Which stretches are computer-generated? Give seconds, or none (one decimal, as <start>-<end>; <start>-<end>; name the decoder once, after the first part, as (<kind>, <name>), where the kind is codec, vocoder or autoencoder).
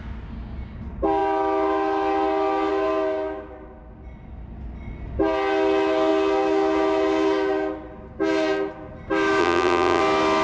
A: 9.4-10.0 (vocoder, BigVGAN v2)